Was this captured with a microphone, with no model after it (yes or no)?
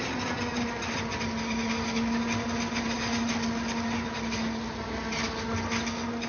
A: yes